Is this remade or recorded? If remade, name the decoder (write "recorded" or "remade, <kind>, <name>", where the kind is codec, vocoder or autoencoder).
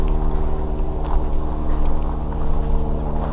recorded